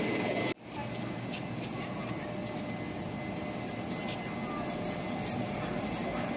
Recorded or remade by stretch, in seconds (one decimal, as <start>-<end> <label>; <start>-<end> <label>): 0.0-6.4 recorded